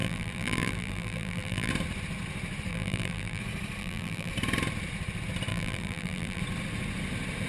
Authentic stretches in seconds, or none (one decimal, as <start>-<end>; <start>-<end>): 1.7-2.7; 3.4-3.8; 4.3-5.5; 6.4-7.5